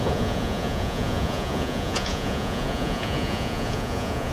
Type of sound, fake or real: fake